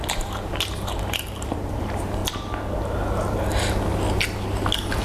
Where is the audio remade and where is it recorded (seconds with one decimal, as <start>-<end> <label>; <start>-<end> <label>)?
0.0-2.2 remade; 2.2-5.0 recorded